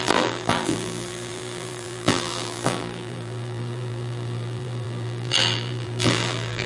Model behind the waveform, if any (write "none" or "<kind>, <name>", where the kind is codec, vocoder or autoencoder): vocoder, BigVGAN v2